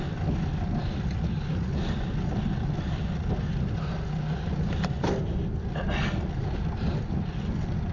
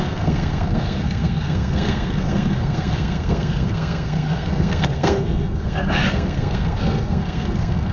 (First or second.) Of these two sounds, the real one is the first